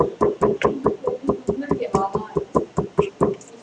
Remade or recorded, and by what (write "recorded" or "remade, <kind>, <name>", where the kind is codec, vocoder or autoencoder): recorded